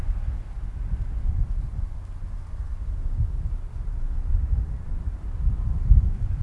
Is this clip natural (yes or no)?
yes